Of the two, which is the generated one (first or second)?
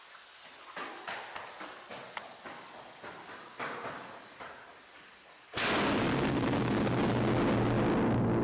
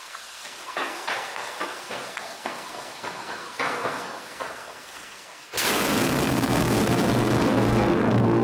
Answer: second